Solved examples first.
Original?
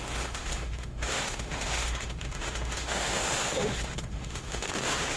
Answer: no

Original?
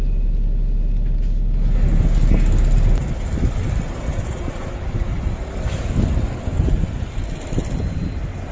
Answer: yes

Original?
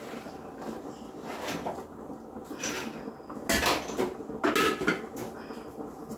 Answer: yes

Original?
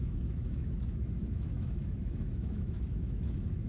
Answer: no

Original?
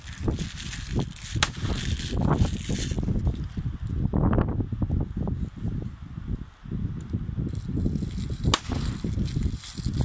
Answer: yes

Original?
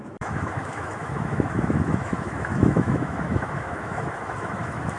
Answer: no